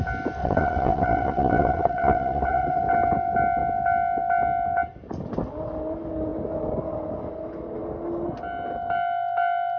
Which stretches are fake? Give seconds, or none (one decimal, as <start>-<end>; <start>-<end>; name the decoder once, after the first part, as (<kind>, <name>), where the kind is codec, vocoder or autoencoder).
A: 0.4-2.8 (vocoder, WaveNeXt)